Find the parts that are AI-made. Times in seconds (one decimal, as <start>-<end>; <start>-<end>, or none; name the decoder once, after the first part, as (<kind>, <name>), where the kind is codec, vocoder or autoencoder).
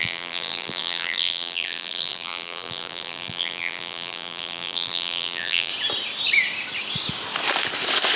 0.0-5.7 (vocoder, BigVGAN v2)